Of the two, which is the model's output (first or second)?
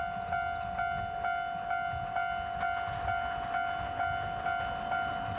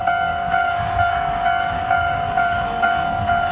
second